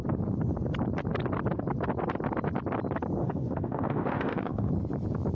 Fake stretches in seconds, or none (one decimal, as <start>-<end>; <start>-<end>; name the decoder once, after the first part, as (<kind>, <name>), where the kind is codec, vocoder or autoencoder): 3.2-4.7 (autoencoder, DAC-VAE)